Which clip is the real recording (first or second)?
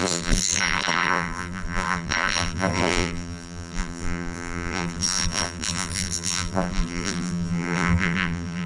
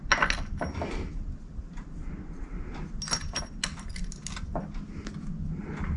second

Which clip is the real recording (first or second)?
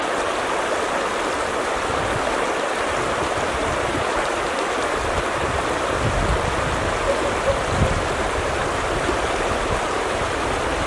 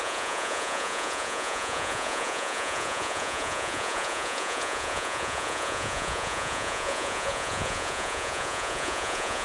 first